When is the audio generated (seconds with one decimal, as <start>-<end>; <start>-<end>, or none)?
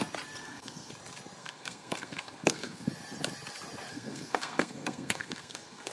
0.4-0.9; 1.4-2.9; 3.9-5.9